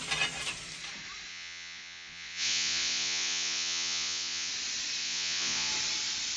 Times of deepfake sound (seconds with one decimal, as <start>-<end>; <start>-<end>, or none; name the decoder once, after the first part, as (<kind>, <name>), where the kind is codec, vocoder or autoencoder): 1.3-4.5 (vocoder, Vocos); 5.0-5.7